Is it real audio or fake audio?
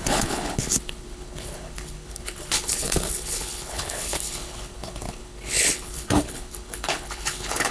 fake